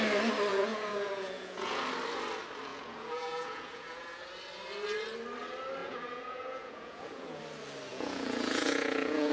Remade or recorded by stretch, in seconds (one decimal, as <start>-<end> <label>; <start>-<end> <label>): 0.0-0.5 recorded; 0.5-1.8 remade; 1.8-2.7 recorded; 2.7-4.3 remade; 4.3-5.8 recorded; 5.8-7.4 remade; 7.4-7.9 recorded; 7.9-9.3 remade